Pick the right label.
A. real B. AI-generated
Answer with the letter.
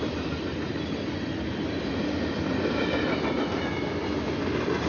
A